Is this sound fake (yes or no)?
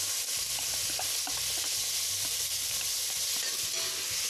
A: no